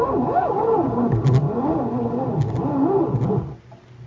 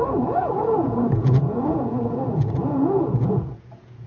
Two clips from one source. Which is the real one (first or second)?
first